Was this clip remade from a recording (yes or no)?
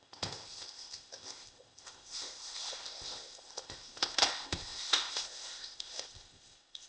yes